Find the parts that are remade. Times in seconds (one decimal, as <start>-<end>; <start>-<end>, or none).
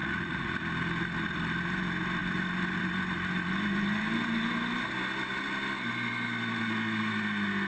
0.0-0.6